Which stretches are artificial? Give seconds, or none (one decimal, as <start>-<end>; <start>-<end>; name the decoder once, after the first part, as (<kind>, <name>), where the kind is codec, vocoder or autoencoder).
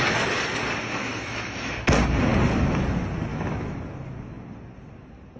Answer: 1.0-1.7 (autoencoder, DAC-VAE); 3.3-3.8